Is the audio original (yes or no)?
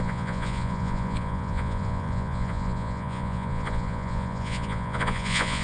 no